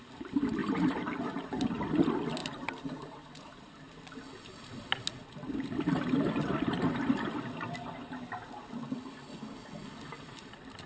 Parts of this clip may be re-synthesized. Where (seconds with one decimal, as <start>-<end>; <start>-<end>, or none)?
0.6-1.6; 2.4-3.9